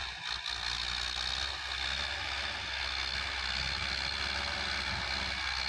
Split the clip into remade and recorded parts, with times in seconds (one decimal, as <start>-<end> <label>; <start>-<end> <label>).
0.0-5.7 recorded